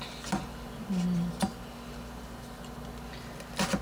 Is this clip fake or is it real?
real